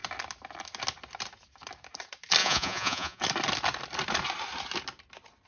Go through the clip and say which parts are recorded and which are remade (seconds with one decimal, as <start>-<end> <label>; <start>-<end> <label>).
0.0-2.4 recorded; 2.4-3.2 remade; 3.2-5.5 recorded